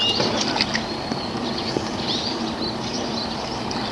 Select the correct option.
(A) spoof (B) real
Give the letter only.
B